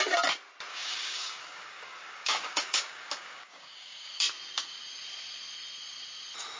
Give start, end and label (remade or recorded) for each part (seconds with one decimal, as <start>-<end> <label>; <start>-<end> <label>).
0.0-0.7 recorded; 0.7-4.1 remade; 4.1-6.6 recorded